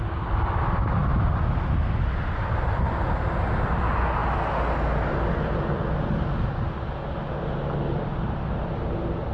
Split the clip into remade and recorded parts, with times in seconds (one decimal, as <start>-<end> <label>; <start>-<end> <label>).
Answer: 0.0-9.3 recorded